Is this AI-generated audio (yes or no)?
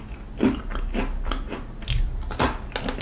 no